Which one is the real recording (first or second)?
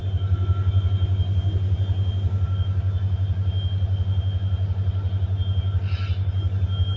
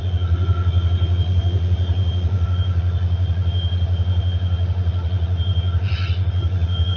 first